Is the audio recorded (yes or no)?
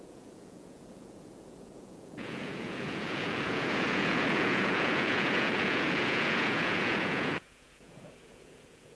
no